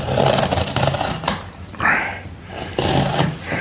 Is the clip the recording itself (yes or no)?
yes